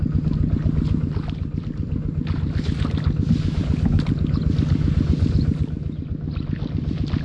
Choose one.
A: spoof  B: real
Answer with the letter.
B